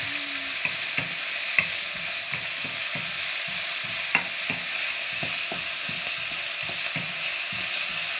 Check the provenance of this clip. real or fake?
real